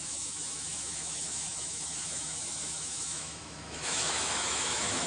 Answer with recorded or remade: remade